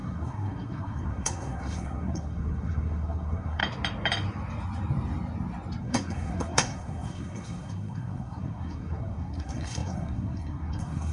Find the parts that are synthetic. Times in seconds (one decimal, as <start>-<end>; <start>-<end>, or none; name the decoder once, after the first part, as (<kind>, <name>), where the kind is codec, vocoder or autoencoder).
0.0-3.6 (codec, SNAC); 5.8-11.1